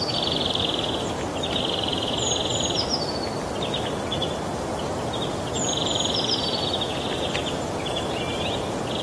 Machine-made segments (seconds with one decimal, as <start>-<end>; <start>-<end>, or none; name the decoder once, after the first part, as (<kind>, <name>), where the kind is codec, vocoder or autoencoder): 0.0-1.3 (vocoder, BigVGAN v2); 4.5-9.0